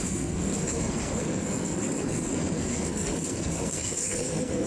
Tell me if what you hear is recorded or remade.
remade